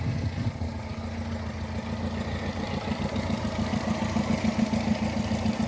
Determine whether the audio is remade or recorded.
recorded